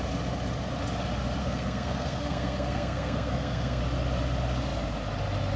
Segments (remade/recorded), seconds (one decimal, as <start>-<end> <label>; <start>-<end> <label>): 0.0-1.4 recorded; 1.4-3.8 remade; 3.8-5.6 recorded